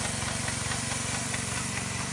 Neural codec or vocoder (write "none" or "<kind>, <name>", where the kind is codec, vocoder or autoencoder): none